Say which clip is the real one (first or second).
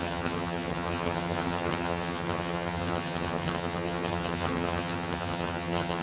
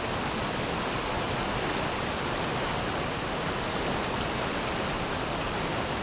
second